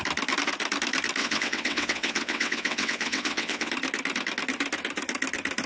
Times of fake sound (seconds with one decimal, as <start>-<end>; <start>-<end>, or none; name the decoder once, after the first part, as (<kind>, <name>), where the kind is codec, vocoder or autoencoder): 1.2-3.7 (vocoder, WaveNeXt)